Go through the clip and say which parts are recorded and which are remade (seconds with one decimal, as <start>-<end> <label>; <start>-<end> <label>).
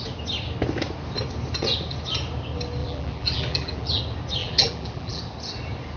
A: 0.0-2.8 recorded; 2.8-4.0 remade; 4.0-4.4 recorded; 4.4-5.2 remade; 5.2-6.0 recorded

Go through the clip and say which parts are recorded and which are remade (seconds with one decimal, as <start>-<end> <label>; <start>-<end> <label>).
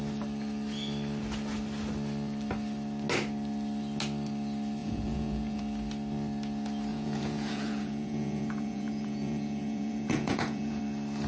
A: 0.0-4.8 recorded; 4.8-5.6 remade; 5.6-6.9 recorded; 6.9-10.8 remade; 10.8-11.3 recorded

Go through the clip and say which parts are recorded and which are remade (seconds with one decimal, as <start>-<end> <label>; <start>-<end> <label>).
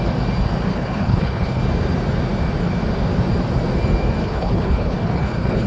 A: 0.0-0.7 recorded; 0.7-1.6 remade; 1.6-4.2 recorded; 4.2-5.7 remade